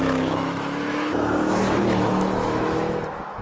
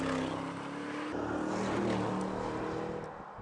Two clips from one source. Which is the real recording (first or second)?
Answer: second